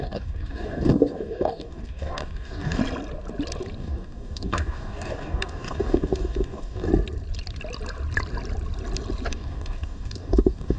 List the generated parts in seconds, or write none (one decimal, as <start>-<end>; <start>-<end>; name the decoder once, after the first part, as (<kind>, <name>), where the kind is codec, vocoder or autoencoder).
0.0-2.8 (codec, DAC); 3.8-6.9; 9.3-10.8